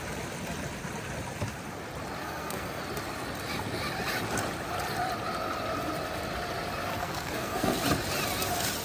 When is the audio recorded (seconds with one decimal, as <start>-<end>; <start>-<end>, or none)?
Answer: 0.0-2.2; 2.8-6.9; 7.8-8.8